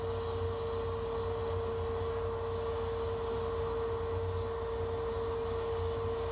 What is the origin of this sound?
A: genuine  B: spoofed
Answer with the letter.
A